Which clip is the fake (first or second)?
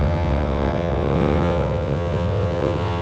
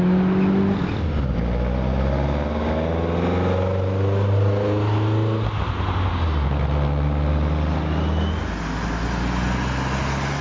first